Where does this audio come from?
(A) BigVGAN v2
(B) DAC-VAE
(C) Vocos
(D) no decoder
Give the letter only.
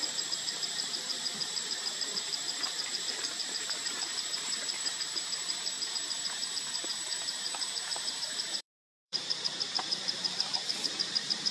A